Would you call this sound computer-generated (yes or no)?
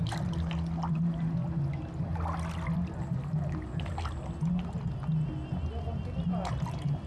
no